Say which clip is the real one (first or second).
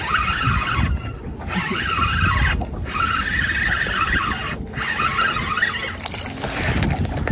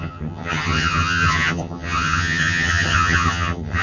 first